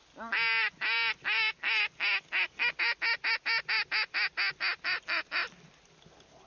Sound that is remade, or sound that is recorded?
recorded